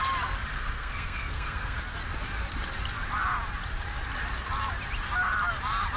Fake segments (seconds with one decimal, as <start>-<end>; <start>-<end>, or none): 0.5-1.8